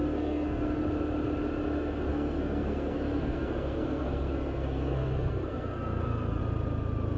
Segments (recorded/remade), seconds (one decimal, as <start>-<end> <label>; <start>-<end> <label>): 0.0-0.8 remade; 0.8-2.1 recorded; 2.1-6.4 remade; 6.4-7.2 recorded